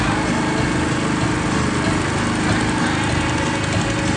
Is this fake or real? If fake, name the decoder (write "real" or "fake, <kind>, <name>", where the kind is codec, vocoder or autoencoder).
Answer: real